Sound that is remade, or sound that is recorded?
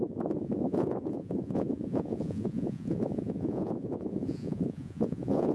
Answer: remade